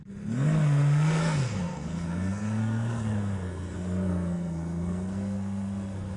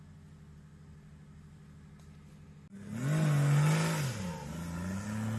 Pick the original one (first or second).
second